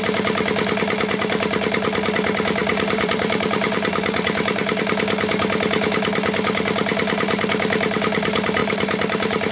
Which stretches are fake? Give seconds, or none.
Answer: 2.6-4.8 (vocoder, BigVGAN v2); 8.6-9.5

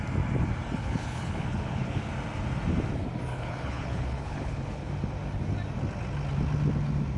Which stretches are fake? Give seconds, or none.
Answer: 0.8-2.1 (codec, HILCodec); 3.3-4.9

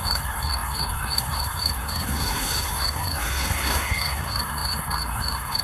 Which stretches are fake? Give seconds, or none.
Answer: 0.0-5.6 (codec, SNAC)